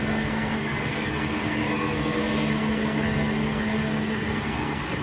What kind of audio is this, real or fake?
fake